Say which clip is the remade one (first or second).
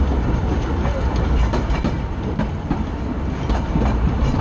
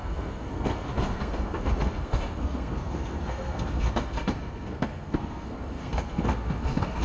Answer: second